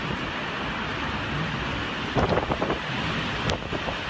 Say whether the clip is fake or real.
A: real